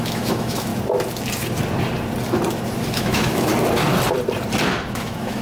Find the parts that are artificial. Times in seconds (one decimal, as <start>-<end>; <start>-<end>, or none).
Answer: 0.0-0.7; 2.9-3.5; 4.9-5.4